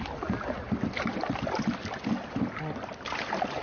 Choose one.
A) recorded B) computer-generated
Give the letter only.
A